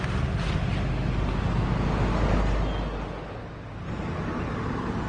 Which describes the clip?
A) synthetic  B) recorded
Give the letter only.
B